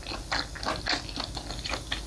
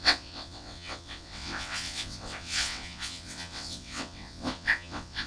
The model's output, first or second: second